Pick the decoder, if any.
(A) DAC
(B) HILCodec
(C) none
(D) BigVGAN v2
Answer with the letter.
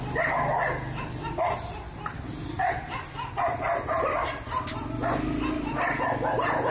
C